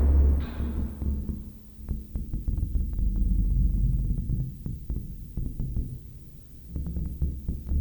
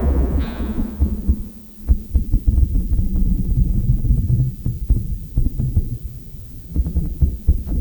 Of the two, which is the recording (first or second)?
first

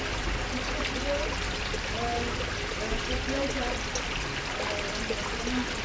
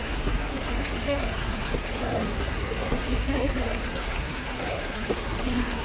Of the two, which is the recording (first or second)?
first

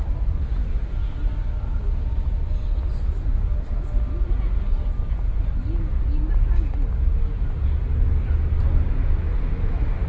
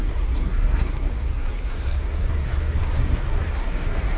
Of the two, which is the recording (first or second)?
first